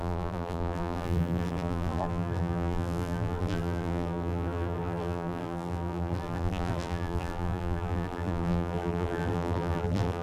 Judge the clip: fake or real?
fake